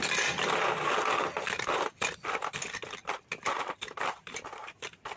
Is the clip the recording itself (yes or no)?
yes